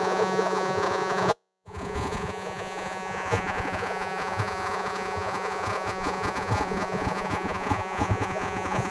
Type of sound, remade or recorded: remade